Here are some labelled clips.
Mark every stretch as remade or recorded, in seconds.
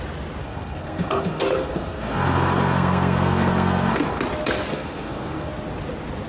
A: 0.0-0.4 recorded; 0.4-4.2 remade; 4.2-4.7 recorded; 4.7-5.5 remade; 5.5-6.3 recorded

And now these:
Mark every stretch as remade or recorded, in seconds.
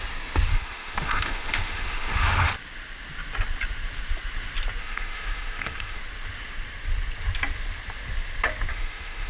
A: 0.0-0.5 recorded; 0.5-2.5 remade; 2.5-4.8 recorded; 4.8-6.0 remade; 6.0-8.7 recorded; 8.7-9.3 remade